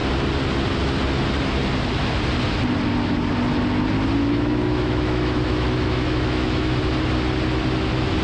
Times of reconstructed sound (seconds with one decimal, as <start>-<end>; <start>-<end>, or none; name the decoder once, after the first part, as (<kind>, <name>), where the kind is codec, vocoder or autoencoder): 4.2-6.8 (autoencoder, DAC-VAE)